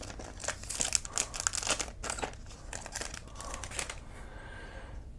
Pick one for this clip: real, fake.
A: real